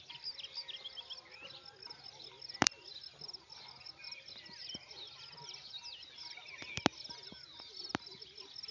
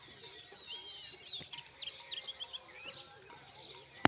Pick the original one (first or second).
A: first